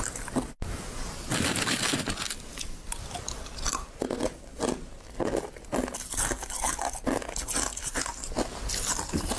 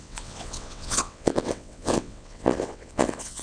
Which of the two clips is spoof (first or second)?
second